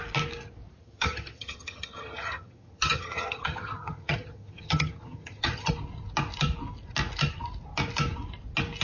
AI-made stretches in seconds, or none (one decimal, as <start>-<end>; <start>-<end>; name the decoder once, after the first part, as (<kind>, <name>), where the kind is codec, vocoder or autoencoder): 0.8-5.7 (vocoder, HiFi-GAN)